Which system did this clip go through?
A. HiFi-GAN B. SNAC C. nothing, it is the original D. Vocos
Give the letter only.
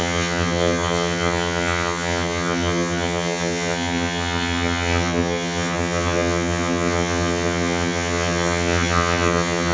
A